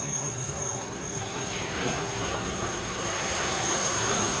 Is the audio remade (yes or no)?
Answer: yes